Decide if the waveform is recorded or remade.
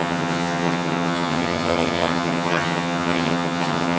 remade